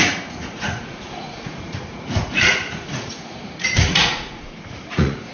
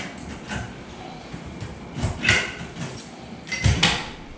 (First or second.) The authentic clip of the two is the second